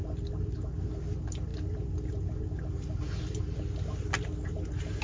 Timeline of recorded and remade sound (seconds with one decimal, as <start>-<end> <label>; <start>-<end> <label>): 0.0-5.0 recorded